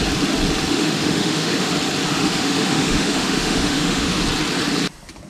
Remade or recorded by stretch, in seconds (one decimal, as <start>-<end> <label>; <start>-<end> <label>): 0.0-0.7 recorded; 0.7-1.7 remade; 1.7-2.1 recorded; 2.1-4.2 remade; 4.2-5.3 recorded